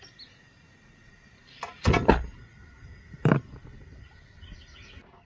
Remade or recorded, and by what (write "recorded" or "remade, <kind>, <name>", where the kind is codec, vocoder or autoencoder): recorded